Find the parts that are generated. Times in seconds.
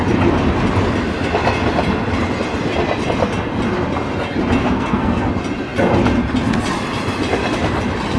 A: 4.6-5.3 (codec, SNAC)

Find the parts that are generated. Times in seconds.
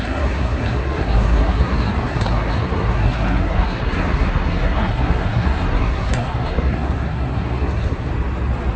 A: 0.0-8.1 (codec, SNAC)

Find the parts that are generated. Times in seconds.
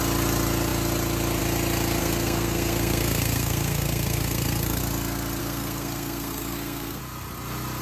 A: 2.0-4.8 (codec, SNAC); 5.4-7.0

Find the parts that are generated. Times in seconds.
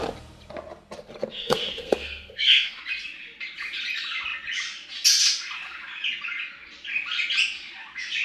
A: 1.4-2.8 (codec, SNAC)